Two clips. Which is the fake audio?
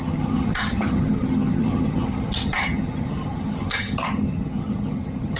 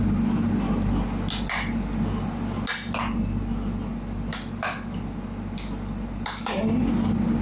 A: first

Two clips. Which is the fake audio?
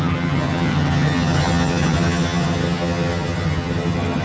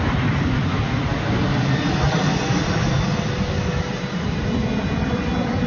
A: first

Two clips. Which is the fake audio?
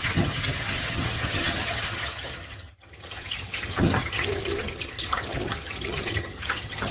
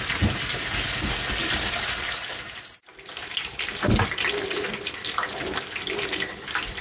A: first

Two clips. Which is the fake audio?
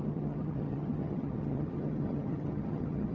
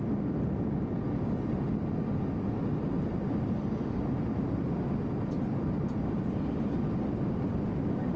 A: first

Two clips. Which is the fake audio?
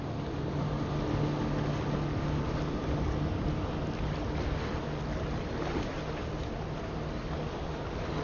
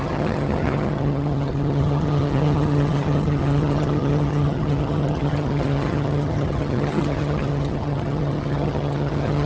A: second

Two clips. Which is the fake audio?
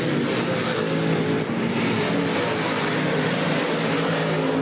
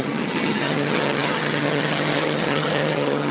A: second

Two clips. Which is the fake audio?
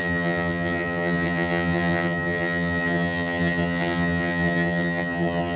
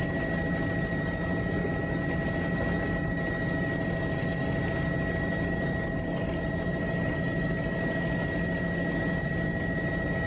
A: first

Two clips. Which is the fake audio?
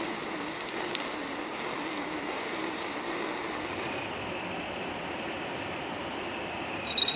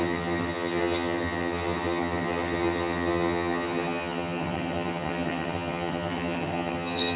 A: second